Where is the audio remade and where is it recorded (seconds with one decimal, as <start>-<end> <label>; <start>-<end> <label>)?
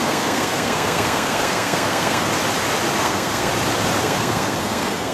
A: 0.0-2.3 remade; 2.3-3.0 recorded; 3.0-3.5 remade; 3.5-4.0 recorded; 4.0-5.1 remade